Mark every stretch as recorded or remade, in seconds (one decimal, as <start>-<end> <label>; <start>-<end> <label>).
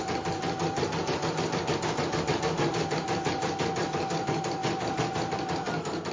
0.0-6.1 recorded